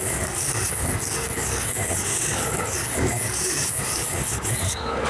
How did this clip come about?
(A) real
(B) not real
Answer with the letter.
B